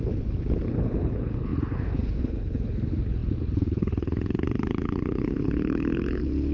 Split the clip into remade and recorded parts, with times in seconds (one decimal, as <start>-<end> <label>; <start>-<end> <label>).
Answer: 0.0-6.5 remade